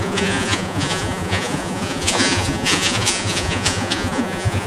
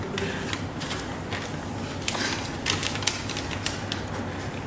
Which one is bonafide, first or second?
second